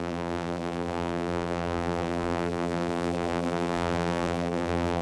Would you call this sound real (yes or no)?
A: no